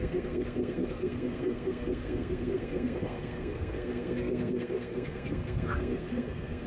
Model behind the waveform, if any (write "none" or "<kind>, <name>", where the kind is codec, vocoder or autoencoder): codec, SNAC